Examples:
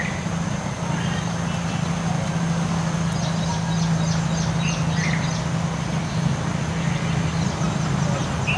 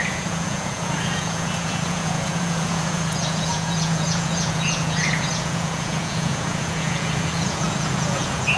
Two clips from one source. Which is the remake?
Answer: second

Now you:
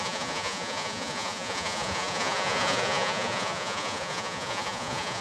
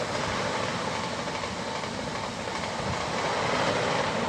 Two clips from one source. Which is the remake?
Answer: first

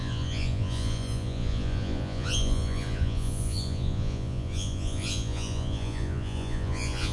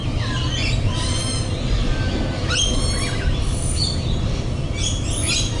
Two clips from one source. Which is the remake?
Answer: first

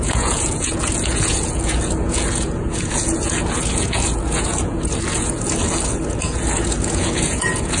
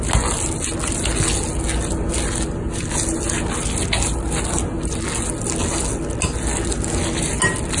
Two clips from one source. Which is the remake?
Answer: first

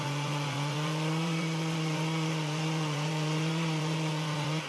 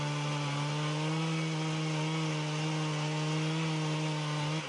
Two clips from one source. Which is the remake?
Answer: first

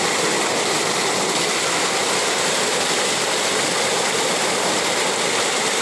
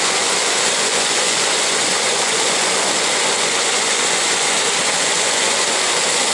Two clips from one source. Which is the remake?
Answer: second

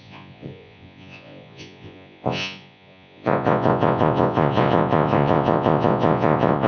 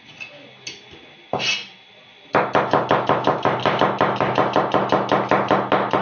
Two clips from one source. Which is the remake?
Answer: first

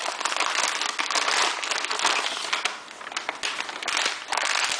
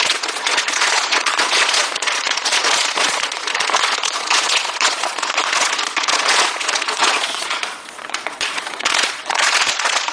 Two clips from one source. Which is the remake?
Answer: second